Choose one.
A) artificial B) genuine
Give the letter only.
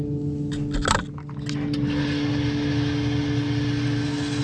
B